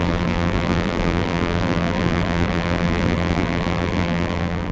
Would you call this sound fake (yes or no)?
yes